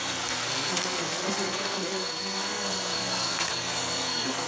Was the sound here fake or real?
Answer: fake